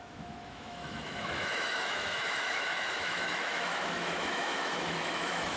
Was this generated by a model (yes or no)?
yes